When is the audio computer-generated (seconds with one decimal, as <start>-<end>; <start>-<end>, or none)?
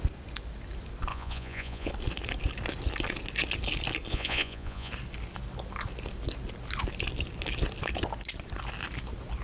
1.1-1.9; 4.1-4.9